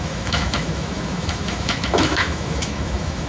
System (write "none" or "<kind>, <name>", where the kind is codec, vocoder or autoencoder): autoencoder, DAC-VAE